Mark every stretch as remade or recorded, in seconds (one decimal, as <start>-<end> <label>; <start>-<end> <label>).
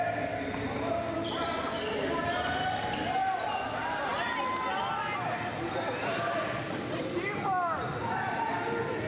0.0-9.1 recorded